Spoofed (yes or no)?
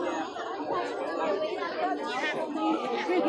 no